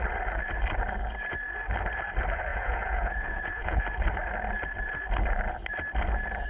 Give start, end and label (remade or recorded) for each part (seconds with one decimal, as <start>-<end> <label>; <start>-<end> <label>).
0.0-2.5 recorded; 2.5-3.8 remade; 3.8-6.5 recorded